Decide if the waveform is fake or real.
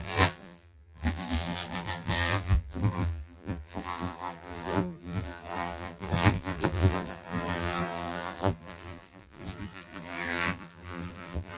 fake